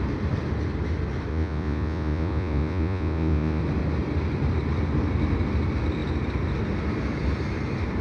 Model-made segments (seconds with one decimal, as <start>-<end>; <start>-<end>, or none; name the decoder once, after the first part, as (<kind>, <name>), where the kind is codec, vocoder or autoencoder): 1.3-3.6 (vocoder, Vocos)